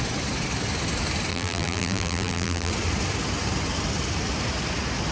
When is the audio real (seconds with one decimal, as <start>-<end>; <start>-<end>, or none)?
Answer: 0.0-1.3; 2.7-5.1

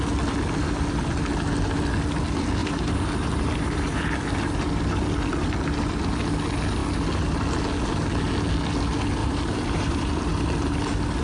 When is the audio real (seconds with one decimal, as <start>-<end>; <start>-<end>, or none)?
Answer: 0.0-2.6; 4.0-9.2; 10.2-11.2

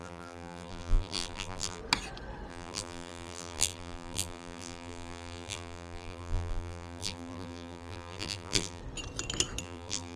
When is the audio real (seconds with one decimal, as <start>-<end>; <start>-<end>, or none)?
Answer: 1.8-2.5; 8.8-9.6